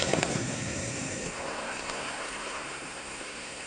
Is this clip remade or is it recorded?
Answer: remade